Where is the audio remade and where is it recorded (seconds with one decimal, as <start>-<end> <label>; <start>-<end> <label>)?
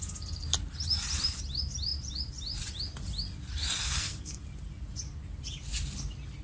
0.0-3.8 recorded; 3.8-4.4 remade; 4.4-6.4 recorded